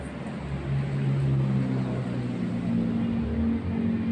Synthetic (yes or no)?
no